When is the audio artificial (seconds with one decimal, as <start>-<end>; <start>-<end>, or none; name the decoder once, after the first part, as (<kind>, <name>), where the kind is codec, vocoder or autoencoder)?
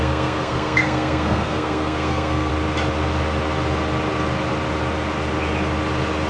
0.0-2.5 (codec, SNAC)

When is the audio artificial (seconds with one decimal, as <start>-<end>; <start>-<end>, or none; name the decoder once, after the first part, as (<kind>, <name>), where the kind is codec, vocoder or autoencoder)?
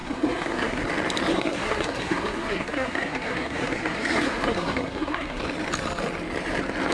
0.0-0.8 (codec, SNAC); 1.3-5.4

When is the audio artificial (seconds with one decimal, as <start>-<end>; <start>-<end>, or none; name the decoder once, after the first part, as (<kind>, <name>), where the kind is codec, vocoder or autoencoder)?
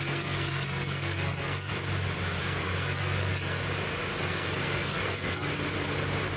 0.0-1.7 (codec, SNAC); 2.4-3.6; 4.2-5.5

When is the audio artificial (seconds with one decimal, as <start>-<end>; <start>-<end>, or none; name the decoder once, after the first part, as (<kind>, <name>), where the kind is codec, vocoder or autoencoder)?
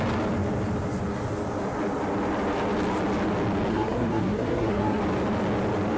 3.7-5.0 (codec, SNAC)